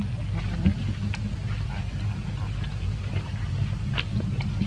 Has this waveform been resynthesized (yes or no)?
no